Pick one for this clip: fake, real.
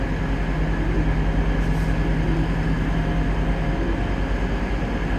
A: real